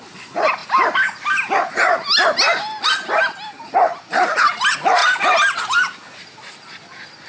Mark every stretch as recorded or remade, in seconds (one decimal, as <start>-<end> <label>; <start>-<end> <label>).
0.0-7.3 recorded